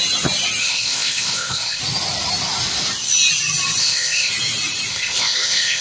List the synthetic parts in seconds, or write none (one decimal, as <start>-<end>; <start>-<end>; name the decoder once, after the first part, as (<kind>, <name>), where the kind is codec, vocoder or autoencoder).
0.6-1.8 (codec, ZipCodec); 3.8-4.3; 4.9-5.8